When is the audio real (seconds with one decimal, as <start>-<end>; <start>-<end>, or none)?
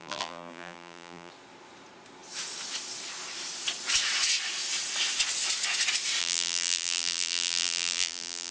1.3-6.2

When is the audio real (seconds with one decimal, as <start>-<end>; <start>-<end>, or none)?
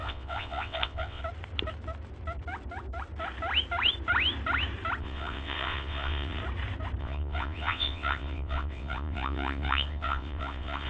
1.2-5.0; 6.4-7.0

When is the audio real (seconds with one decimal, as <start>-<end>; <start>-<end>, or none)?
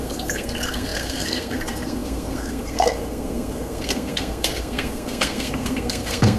none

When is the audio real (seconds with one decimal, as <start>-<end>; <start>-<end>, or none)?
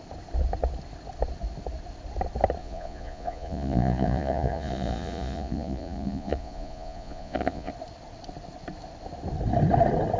0.0-2.6; 7.7-10.2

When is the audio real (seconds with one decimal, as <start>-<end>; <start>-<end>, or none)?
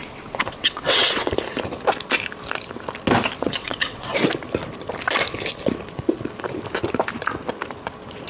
1.3-3.4; 4.1-8.3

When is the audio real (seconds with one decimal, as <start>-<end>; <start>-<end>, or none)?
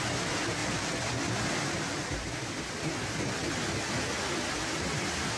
0.0-0.6; 2.7-3.4; 4.0-5.4